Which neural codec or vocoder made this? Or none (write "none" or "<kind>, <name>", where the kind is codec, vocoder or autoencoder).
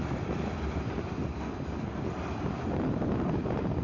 none